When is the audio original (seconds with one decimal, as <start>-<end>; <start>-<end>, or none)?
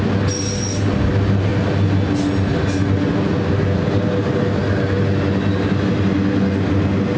0.0-7.2